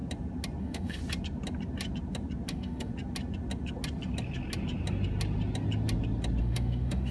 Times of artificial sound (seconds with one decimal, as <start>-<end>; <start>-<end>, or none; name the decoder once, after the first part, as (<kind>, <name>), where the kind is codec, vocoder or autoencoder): 0.6-1.0 (autoencoder, DAC-VAE); 2.5-2.9; 6.4-7.1